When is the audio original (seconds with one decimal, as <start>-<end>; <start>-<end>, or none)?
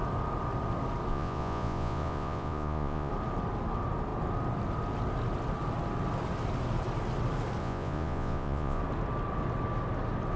0.0-1.1; 3.1-7.6; 8.8-10.4